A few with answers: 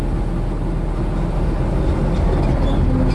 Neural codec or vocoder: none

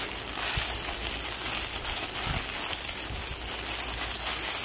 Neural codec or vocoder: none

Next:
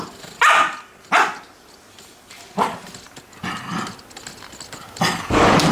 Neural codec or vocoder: none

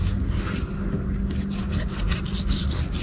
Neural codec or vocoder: none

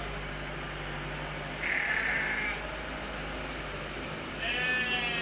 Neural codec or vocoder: none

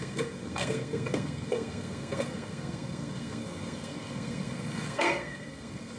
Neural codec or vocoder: codec, SNAC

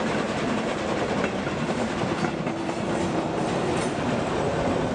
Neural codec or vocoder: none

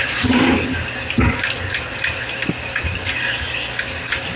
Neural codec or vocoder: none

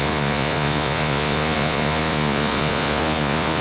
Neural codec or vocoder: vocoder, Vocos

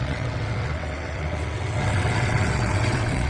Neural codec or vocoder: vocoder, WaveNeXt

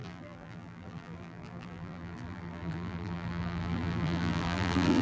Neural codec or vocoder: vocoder, BigVGAN v2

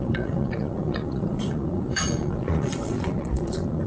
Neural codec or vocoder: vocoder, Vocos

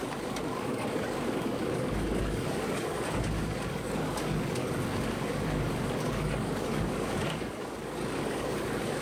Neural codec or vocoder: codec, DAC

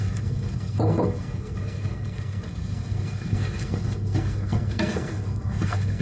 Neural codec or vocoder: codec, SNAC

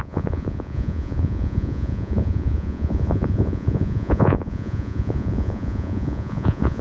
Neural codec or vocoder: vocoder, Vocos